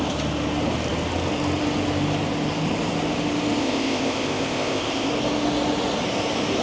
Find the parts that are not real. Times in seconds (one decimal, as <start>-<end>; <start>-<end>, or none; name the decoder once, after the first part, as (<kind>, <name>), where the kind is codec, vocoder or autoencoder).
3.6-5.1 (codec, ZipCodec)